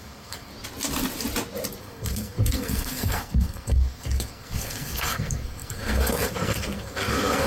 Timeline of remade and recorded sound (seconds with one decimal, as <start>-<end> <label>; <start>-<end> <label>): 0.0-0.5 remade; 0.5-1.8 recorded; 1.8-7.5 remade

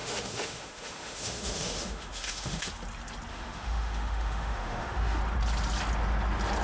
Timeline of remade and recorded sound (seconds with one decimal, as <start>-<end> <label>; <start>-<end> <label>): 0.0-2.7 remade; 2.7-3.3 recorded; 3.3-5.2 remade; 5.2-6.6 recorded

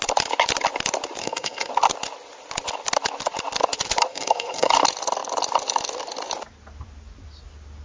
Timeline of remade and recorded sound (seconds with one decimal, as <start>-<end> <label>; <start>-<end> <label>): 0.0-1.2 recorded; 1.2-1.7 remade; 1.7-4.1 recorded; 4.1-4.7 remade; 4.7-7.8 recorded

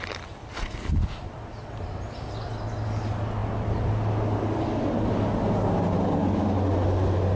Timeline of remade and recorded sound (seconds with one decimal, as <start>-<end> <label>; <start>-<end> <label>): 0.0-7.4 recorded

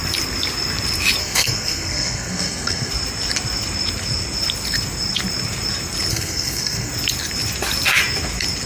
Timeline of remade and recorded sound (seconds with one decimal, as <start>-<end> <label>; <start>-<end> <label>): 0.0-1.2 recorded; 1.2-2.9 remade; 2.9-6.1 recorded; 6.1-6.9 remade; 6.9-8.7 recorded

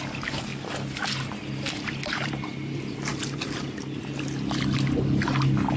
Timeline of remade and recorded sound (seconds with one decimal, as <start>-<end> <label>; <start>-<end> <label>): 0.0-5.8 recorded

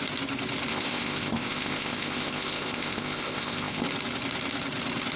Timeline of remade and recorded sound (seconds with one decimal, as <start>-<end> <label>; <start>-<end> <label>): 0.0-0.7 recorded; 0.7-3.8 remade; 3.8-5.2 recorded